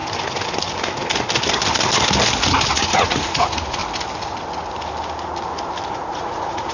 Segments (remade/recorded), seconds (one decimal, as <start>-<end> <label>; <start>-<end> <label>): 0.0-2.7 recorded; 2.7-3.8 remade; 3.8-5.9 recorded; 5.9-6.7 remade

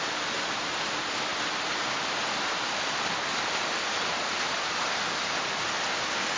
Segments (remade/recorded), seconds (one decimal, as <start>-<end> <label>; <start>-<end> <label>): 0.0-6.4 recorded

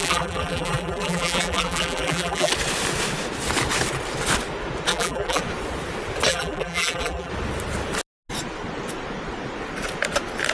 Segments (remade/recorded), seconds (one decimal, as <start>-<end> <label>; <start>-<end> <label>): 0.0-2.5 remade; 2.5-4.9 recorded; 4.9-5.4 remade; 5.4-6.3 recorded; 6.3-7.3 remade; 7.3-10.5 recorded